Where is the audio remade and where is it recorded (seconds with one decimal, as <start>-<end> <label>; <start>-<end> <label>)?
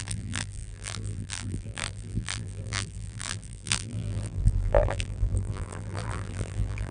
0.0-6.9 remade